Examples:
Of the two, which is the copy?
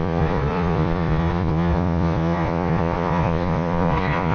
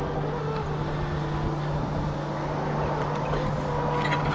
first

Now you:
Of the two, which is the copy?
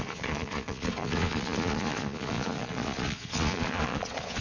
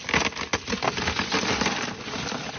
first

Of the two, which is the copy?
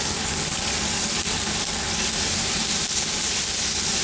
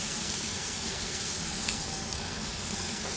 second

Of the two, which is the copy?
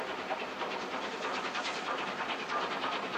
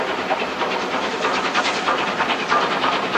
second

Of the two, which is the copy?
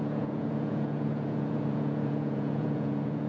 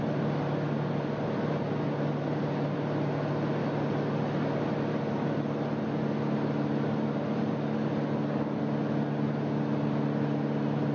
first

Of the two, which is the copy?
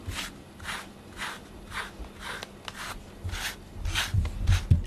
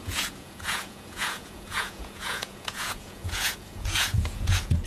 second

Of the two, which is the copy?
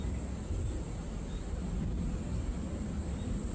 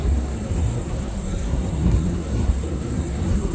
second